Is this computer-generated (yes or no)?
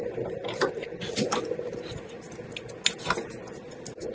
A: no